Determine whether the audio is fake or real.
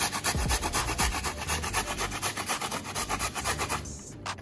fake